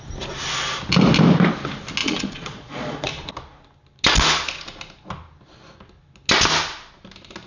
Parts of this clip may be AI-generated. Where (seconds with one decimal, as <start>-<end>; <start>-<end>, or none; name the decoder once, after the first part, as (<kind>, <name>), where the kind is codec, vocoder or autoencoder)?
2.0-3.1 (vocoder, Vocos)